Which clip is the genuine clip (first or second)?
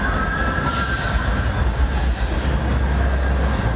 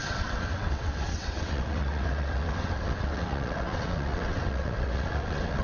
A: first